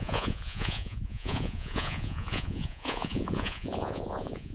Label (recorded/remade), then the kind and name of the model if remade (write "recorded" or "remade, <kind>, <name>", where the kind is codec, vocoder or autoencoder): remade, vocoder, Vocos